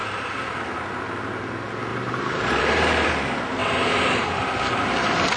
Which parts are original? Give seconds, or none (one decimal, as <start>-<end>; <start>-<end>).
0.6-1.9; 3.1-3.6; 4.4-5.4